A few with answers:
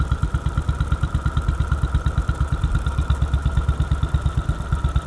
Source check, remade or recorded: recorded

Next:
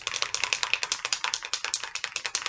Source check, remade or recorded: recorded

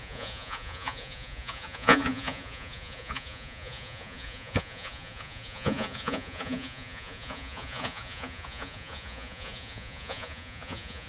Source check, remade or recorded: remade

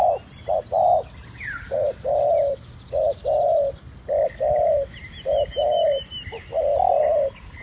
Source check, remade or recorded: recorded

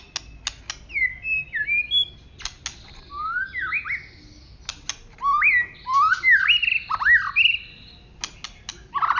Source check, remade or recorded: recorded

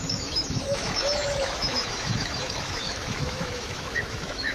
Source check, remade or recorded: remade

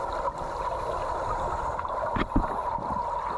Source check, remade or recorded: recorded